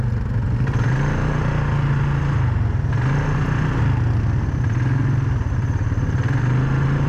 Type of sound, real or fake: real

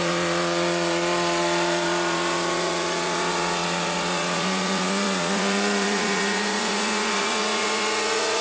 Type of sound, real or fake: fake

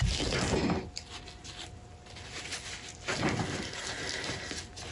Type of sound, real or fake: real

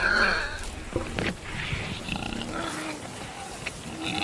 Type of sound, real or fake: real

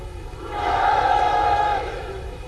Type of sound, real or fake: fake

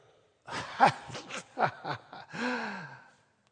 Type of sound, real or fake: real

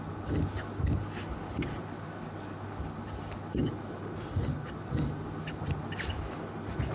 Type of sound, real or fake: real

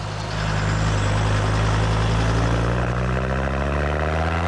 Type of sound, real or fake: real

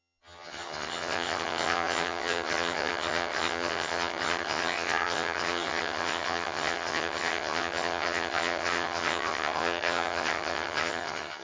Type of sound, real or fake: fake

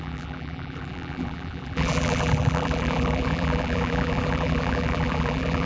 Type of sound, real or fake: fake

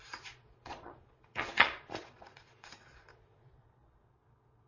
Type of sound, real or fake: fake